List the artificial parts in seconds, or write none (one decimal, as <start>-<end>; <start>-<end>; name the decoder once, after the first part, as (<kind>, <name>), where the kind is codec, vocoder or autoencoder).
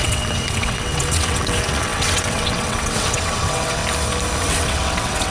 0.0-3.8 (vocoder, WaveNeXt); 4.4-5.3